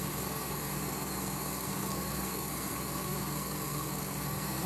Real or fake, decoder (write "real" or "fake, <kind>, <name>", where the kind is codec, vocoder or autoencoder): fake, codec, SNAC